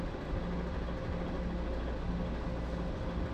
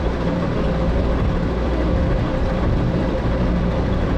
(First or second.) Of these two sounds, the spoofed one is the second